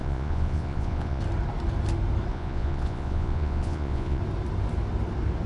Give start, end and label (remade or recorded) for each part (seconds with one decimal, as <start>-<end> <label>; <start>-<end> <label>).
0.0-1.2 remade; 1.2-2.3 recorded; 2.3-4.2 remade; 4.2-5.5 recorded